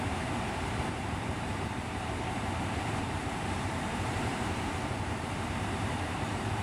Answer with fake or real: fake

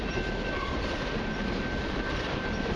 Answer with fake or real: fake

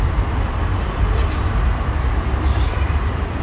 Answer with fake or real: fake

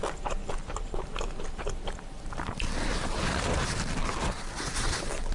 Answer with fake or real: real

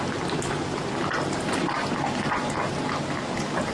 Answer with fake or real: real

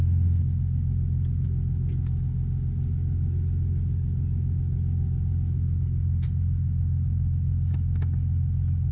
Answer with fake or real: real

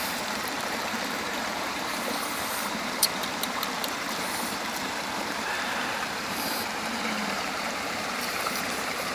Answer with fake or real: fake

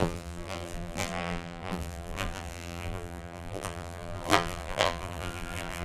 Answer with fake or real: fake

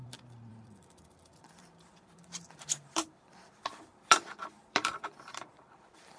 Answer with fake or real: fake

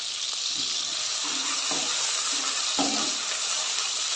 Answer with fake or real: real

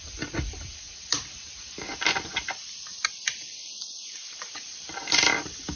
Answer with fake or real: fake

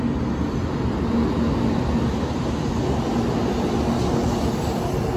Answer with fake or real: real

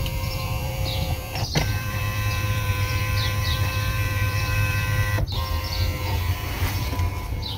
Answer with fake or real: fake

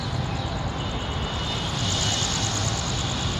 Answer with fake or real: real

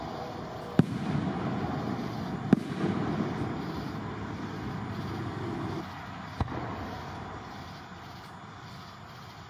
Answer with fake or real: real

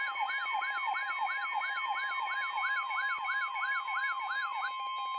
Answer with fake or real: real